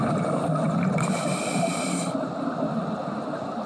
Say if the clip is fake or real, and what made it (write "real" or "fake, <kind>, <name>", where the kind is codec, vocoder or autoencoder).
fake, vocoder, BigVGAN v2